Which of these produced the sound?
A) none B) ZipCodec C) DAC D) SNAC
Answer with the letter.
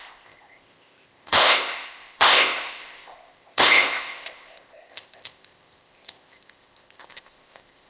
B